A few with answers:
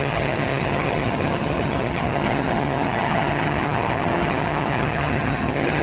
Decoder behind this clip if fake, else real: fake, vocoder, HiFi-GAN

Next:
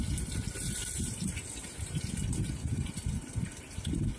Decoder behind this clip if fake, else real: real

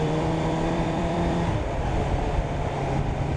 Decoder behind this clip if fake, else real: fake, vocoder, BigVGAN v2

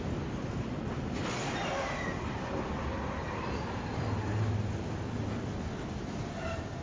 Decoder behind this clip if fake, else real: real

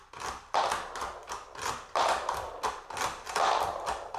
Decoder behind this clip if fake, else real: real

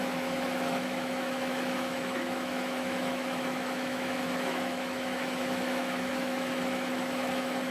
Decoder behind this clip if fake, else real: fake, autoencoder, DAC-VAE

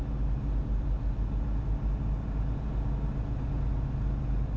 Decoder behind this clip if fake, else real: real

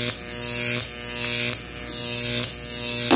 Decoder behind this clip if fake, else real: real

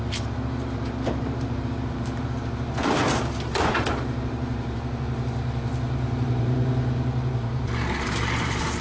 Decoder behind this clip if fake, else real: fake, vocoder, BigVGAN v2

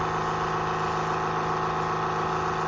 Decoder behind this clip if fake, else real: real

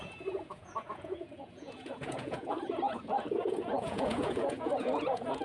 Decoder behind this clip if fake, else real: fake, vocoder, Vocos